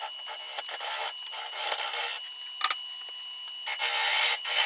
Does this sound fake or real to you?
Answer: real